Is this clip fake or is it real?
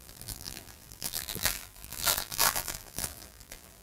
fake